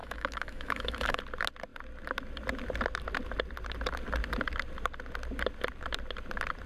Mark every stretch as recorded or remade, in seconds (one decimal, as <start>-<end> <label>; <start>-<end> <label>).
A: 0.0-1.2 remade; 1.2-6.7 recorded